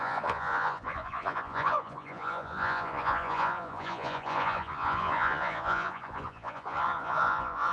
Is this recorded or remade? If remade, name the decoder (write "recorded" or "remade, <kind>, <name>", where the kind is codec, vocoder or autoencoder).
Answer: remade, vocoder, Vocos